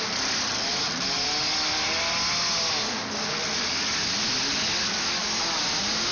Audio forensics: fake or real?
real